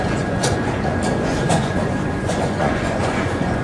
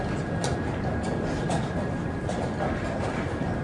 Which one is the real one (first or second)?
second